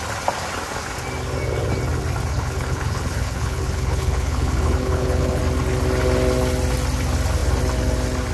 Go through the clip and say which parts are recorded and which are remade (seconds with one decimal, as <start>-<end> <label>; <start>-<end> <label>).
0.0-2.3 recorded; 2.3-5.4 remade; 5.4-8.3 recorded